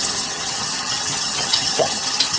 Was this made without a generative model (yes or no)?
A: no